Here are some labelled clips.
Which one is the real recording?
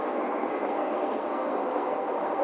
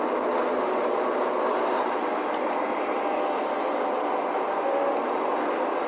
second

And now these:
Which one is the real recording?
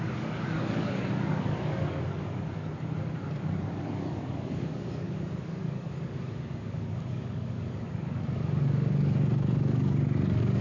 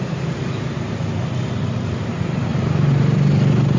second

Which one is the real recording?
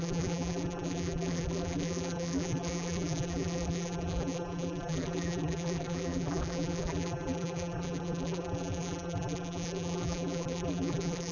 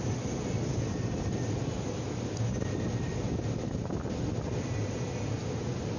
second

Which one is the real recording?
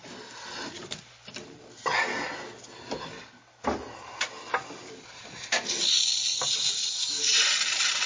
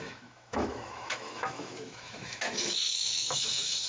first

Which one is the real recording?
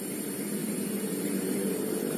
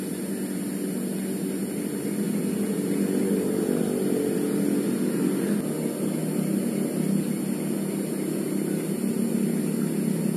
second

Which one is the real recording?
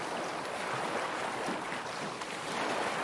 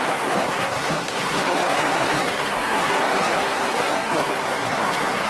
first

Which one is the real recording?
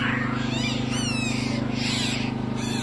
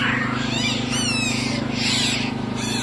first